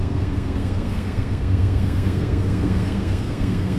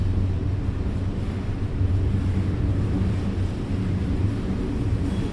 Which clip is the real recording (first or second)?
second